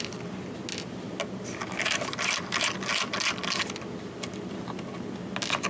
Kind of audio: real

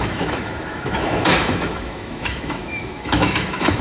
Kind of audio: fake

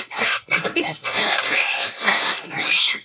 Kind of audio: fake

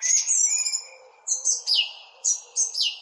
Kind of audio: fake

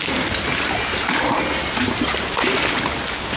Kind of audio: real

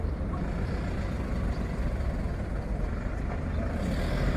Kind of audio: real